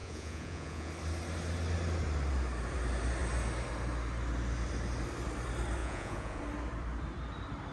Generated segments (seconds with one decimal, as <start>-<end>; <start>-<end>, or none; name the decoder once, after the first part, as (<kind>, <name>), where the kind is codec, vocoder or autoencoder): 0.0-0.9 (vocoder, Vocos); 5.8-6.4